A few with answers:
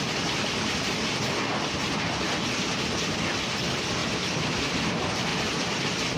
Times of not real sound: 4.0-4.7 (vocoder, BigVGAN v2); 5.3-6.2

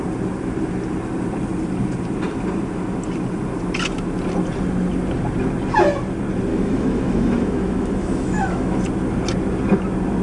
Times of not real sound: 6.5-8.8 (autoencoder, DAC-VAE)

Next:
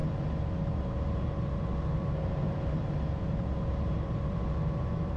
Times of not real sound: 0.6-5.2 (vocoder, BigVGAN v2)

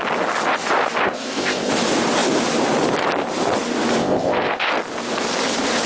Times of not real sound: 1.0-1.7 (codec, ZipCodec); 4.0-4.7

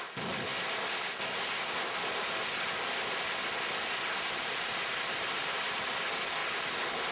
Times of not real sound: none